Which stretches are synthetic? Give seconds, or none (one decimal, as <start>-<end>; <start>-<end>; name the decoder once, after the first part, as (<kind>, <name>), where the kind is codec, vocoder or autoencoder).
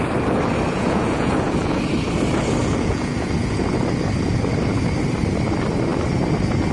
0.7-1.8 (vocoder, Vocos); 2.6-3.7